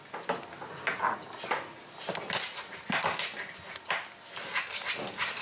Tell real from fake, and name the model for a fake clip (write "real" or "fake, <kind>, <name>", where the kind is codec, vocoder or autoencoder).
real